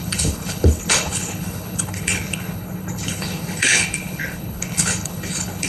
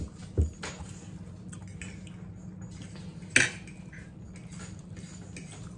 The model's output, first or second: first